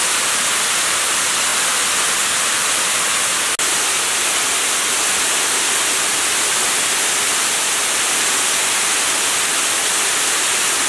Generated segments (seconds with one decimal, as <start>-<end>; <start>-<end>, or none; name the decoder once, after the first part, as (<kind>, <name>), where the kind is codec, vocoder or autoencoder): none